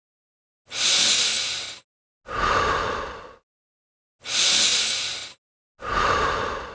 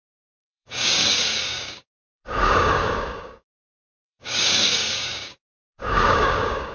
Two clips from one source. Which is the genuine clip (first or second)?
first